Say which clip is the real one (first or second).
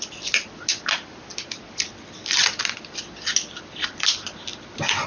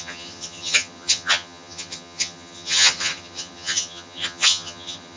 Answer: first